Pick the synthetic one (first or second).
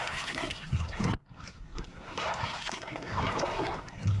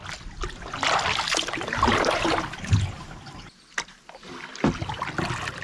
first